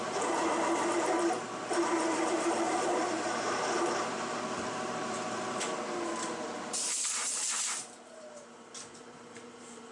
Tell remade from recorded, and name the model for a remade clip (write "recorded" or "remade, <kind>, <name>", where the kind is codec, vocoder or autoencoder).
remade, vocoder, BigVGAN v2